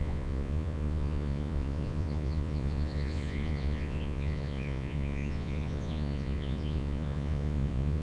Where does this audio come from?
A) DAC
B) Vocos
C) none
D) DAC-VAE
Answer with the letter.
B